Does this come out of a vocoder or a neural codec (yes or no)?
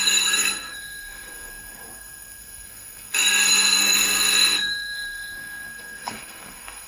yes